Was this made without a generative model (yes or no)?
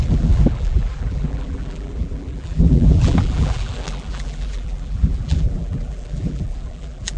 no